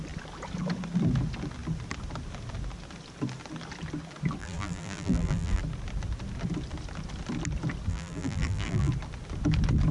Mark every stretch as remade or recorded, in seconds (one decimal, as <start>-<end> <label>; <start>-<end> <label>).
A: 0.0-4.4 recorded; 4.4-5.6 remade; 5.6-7.9 recorded; 7.9-8.9 remade; 8.9-9.9 recorded